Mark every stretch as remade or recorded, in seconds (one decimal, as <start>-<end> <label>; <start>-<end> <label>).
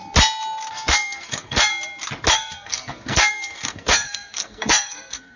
0.0-0.7 recorded; 0.7-1.7 remade; 1.7-2.3 recorded; 2.3-5.4 remade